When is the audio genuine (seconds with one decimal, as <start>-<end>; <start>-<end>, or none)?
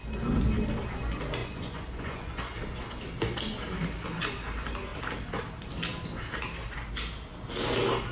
0.0-1.4; 2.4-8.1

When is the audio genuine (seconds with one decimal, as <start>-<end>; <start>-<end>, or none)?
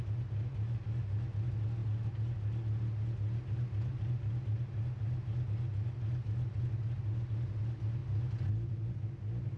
0.0-9.6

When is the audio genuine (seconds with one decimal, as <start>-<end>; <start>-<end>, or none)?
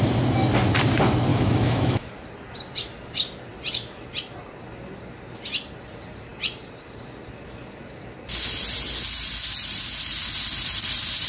0.0-1.3; 2.0-11.3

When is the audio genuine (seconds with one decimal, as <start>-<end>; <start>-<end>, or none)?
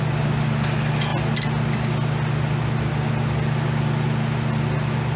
0.0-5.2